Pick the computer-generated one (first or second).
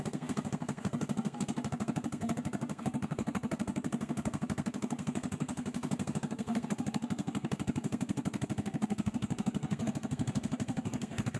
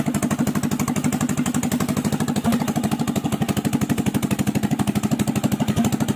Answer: first